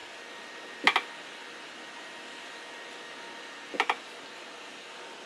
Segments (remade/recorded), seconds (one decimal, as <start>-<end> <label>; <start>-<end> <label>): 0.0-5.3 recorded